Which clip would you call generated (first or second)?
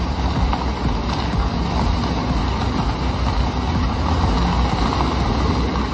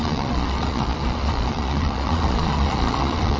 second